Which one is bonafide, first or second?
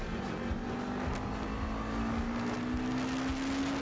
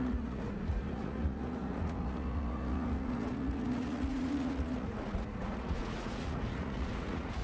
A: first